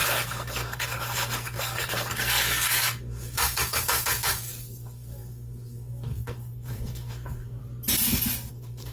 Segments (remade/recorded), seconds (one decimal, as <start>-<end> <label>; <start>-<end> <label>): 0.0-7.6 remade; 7.6-8.5 recorded; 8.5-8.9 remade